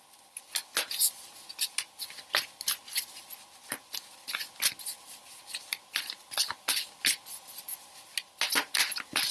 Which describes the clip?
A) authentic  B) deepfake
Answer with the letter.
A